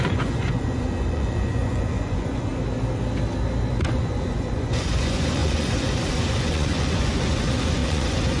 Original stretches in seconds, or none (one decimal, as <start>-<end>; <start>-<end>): 2.5-3.7